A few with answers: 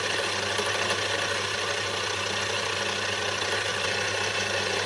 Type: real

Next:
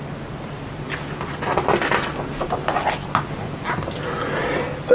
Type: real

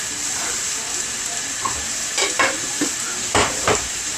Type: fake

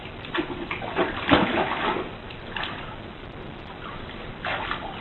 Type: real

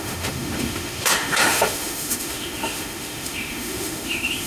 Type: fake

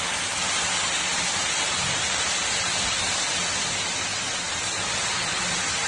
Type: real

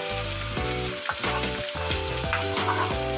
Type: real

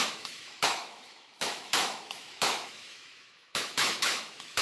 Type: fake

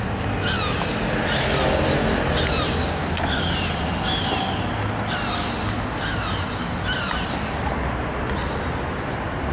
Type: real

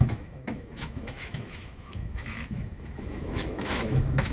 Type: fake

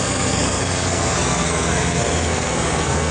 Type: fake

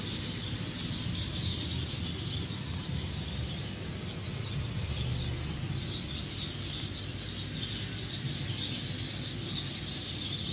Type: real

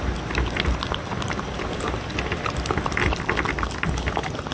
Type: real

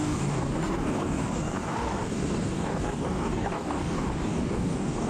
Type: fake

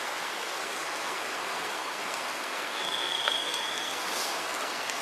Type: fake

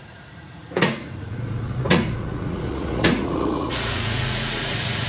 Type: fake